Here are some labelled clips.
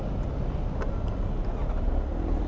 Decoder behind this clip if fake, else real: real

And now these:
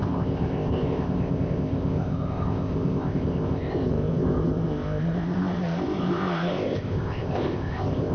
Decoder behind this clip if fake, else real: fake, codec, ZipCodec